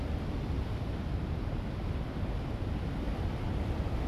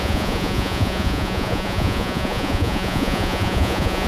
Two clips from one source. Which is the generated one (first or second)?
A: second